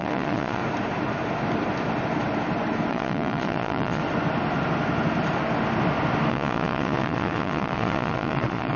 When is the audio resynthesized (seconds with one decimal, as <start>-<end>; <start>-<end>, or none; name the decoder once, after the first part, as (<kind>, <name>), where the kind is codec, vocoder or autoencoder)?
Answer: 0.0-0.6 (vocoder, Vocos); 2.9-4.0; 6.3-8.8